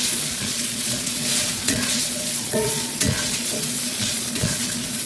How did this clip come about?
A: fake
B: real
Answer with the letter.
A